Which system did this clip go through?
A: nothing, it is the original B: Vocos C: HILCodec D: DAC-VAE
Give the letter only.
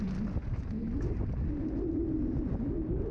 A